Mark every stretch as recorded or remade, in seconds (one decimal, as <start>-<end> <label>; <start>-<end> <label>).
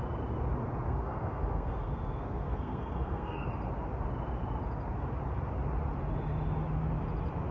0.0-0.9 recorded; 0.9-3.5 remade; 3.5-7.5 recorded